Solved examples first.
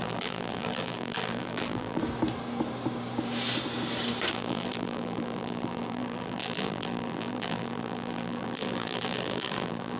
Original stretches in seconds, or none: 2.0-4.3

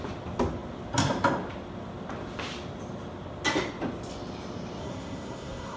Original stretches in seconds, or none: 0.0-4.8

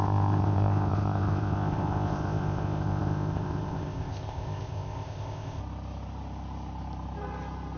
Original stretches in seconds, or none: 5.6-7.8